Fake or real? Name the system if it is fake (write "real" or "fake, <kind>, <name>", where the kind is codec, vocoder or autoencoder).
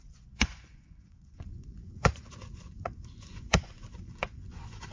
fake, vocoder, Vocos